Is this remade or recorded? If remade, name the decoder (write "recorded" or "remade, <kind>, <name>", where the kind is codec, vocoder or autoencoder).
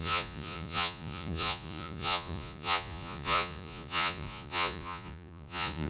remade, vocoder, Vocos